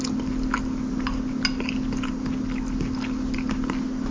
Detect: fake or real real